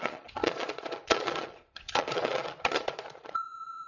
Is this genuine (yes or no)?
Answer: no